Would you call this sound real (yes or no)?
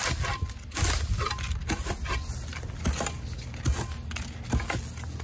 yes